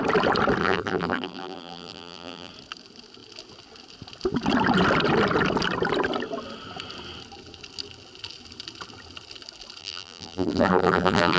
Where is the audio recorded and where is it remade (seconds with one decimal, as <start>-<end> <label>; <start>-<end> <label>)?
0.0-0.6 recorded; 0.6-2.5 remade; 2.5-9.8 recorded; 9.8-11.4 remade

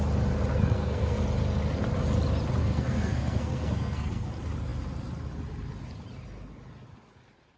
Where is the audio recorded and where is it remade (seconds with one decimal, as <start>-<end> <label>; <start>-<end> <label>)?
0.0-0.5 recorded; 0.5-1.2 remade; 1.2-2.6 recorded; 2.6-4.3 remade; 4.3-7.6 recorded

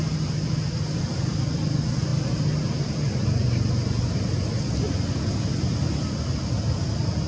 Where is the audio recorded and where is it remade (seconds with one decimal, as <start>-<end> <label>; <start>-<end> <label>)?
0.0-7.3 recorded

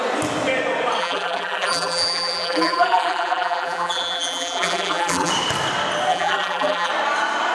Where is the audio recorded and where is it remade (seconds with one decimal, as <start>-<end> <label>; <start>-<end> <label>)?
0.0-1.0 recorded; 1.0-5.3 remade; 5.3-6.1 recorded; 6.1-6.9 remade; 6.9-7.5 recorded

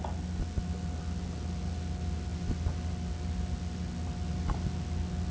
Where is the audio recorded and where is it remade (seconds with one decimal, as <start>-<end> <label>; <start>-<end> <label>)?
0.0-5.3 recorded

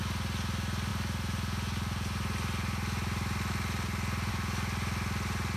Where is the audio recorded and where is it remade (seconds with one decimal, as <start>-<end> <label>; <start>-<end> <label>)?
0.0-5.6 recorded

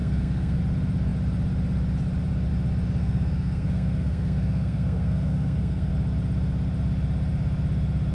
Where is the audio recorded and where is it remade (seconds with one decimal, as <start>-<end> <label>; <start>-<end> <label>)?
0.0-0.6 remade; 0.6-3.0 recorded; 3.0-5.9 remade; 5.9-8.1 recorded

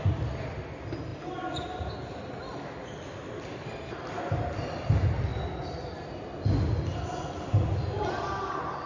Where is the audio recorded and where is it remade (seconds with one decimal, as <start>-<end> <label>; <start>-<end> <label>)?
0.0-8.9 recorded